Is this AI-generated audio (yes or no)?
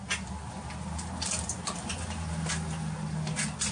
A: no